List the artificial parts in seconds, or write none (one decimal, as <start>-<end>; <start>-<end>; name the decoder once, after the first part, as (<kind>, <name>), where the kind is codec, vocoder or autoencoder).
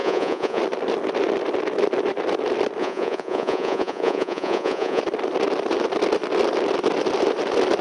0.0-0.6 (vocoder, Vocos); 2.8-5.0